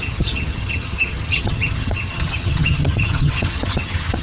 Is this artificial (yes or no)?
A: yes